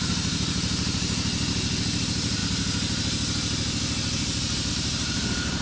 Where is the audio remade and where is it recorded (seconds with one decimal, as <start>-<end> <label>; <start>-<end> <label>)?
0.0-1.3 remade; 1.3-2.0 recorded; 2.0-2.4 remade; 2.4-4.7 recorded; 4.7-5.6 remade